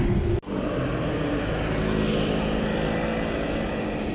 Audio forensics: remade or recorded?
recorded